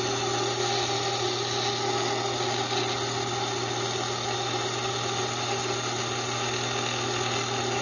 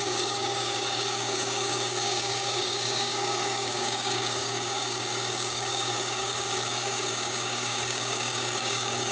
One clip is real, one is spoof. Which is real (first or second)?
first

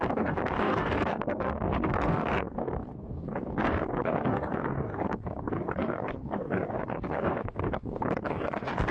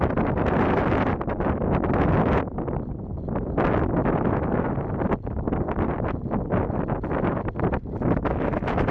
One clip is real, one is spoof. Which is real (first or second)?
second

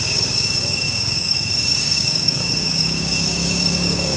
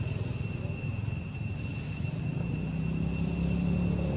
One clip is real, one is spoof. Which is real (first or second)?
second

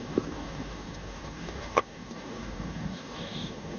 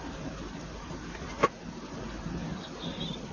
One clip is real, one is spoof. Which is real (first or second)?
second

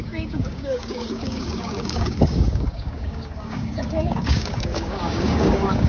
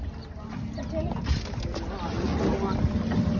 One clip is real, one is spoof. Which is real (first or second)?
second